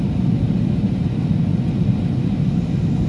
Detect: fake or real real